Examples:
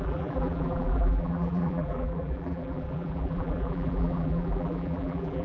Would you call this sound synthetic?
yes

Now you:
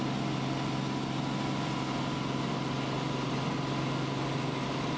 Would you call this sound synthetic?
no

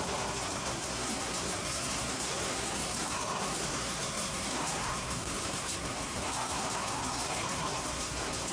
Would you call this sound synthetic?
yes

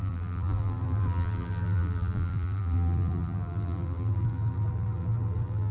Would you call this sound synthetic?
yes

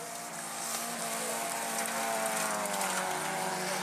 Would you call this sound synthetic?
no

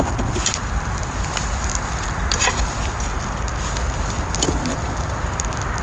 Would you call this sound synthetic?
no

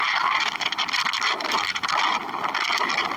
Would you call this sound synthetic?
no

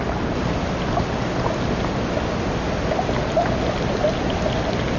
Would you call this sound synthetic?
no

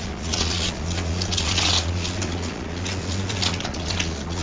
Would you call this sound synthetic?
yes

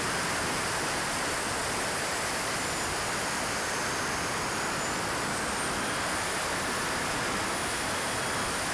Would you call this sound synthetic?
no